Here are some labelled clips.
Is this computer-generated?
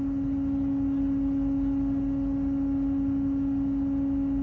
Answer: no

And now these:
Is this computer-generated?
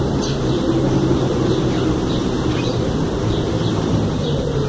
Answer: yes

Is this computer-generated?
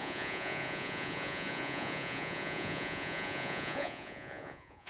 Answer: yes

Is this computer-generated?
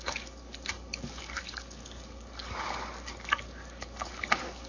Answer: yes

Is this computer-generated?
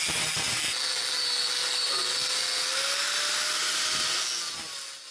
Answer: no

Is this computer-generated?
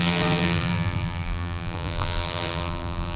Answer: yes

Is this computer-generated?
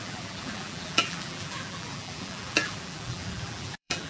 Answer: yes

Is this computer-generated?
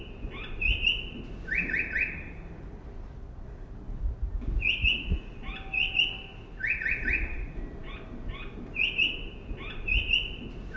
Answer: no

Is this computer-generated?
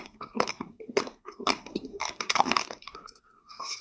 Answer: yes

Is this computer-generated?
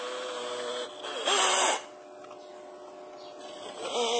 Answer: no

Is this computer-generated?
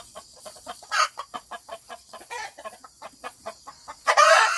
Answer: yes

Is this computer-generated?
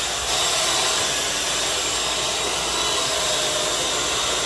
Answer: no